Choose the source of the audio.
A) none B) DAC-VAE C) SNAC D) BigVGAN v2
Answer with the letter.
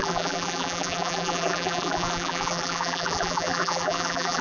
D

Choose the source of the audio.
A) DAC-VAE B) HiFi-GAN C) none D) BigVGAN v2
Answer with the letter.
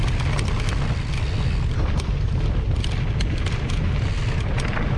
C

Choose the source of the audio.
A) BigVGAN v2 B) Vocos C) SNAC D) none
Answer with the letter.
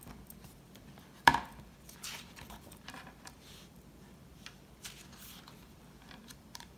A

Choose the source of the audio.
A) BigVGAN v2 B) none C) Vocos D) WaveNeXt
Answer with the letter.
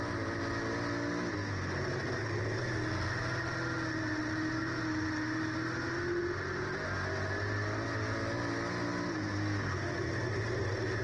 B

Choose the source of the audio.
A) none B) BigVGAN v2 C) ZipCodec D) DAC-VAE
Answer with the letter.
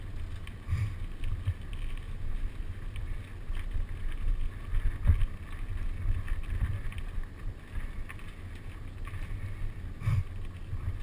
A